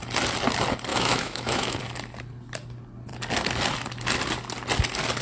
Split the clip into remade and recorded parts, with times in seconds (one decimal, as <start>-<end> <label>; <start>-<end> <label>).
0.0-0.9 recorded; 0.9-1.8 remade; 1.8-5.2 recorded